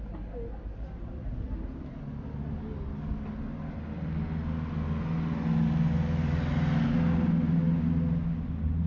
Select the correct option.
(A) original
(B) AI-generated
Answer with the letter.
A